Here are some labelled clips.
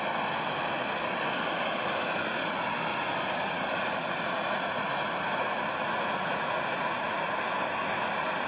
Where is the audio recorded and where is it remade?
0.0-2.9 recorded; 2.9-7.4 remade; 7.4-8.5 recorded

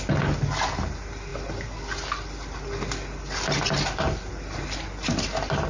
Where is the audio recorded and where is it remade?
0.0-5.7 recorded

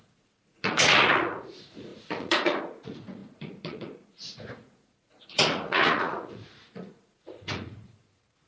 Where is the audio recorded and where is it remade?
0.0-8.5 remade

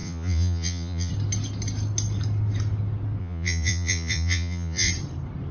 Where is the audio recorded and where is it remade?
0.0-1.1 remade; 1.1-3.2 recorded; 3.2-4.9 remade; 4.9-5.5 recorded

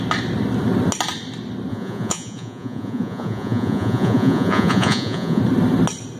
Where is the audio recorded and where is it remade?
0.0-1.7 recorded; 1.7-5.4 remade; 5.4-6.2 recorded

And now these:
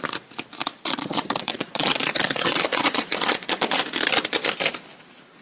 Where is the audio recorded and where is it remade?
0.0-0.6 recorded; 0.6-3.8 remade; 3.8-5.4 recorded

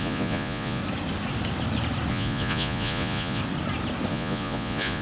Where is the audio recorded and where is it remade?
0.0-0.8 remade; 0.8-2.1 recorded; 2.1-3.4 remade; 3.4-4.1 recorded; 4.1-5.0 remade

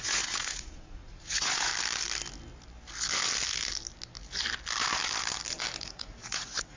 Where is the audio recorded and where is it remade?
0.0-1.7 remade; 1.7-5.8 recorded; 5.8-6.8 remade